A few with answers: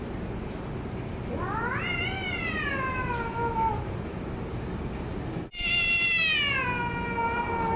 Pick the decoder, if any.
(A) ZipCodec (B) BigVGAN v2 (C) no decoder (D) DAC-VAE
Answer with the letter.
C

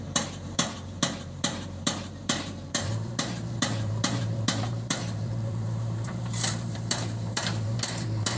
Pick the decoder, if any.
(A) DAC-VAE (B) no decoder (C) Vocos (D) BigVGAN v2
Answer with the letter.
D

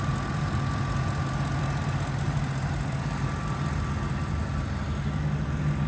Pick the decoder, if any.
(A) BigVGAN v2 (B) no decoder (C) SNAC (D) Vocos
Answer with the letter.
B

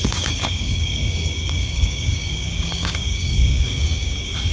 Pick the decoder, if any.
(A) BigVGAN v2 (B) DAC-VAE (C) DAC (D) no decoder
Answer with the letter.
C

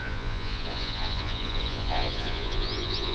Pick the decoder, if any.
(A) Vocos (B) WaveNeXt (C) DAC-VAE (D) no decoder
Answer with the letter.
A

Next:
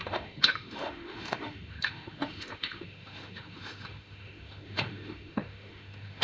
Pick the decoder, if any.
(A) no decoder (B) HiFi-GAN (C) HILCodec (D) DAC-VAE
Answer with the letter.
D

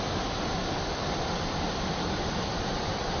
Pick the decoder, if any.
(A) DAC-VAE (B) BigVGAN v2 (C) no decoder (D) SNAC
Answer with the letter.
B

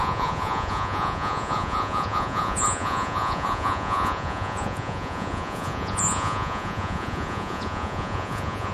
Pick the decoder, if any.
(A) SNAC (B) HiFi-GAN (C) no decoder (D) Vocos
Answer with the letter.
D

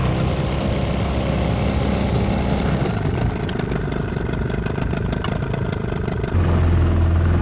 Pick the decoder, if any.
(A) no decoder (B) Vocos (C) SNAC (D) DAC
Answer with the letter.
A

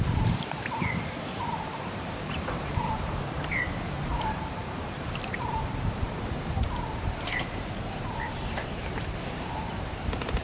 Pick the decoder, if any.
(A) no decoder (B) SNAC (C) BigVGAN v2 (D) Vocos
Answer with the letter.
C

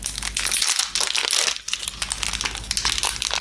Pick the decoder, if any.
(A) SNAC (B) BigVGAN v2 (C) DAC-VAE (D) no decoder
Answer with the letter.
D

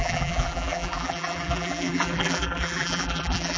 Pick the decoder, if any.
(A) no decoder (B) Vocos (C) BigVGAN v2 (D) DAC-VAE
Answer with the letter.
C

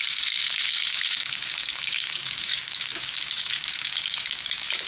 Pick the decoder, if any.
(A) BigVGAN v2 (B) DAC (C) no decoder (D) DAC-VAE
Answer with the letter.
B